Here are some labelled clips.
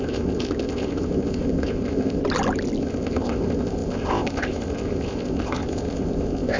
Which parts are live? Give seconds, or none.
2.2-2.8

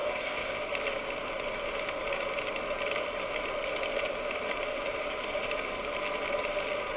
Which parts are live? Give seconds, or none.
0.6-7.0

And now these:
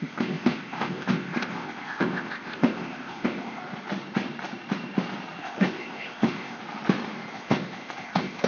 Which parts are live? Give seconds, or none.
3.6-5.4; 6.6-7.3

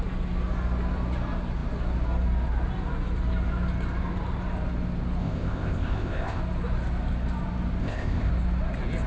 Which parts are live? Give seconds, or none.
0.0-5.2; 6.4-7.8; 8.3-9.1

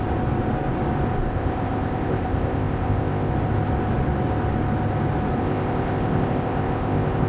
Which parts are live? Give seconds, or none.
0.0-1.3; 3.3-5.4

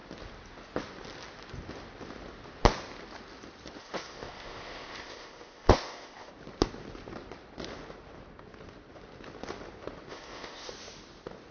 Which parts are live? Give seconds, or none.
0.0-3.8; 6.3-10.1; 10.7-11.5

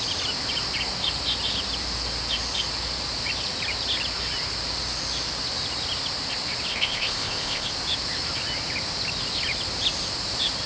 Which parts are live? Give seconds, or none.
0.0-6.7; 7.7-10.7

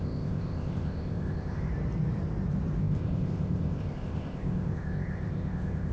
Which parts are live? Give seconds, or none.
1.7-2.8